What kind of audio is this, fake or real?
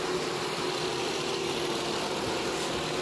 real